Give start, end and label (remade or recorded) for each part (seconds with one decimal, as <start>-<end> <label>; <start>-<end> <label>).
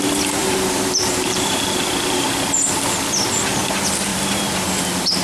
0.0-0.4 recorded; 0.4-2.5 remade; 2.5-4.1 recorded; 4.1-4.8 remade; 4.8-5.2 recorded